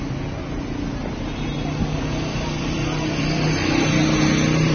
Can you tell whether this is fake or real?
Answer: real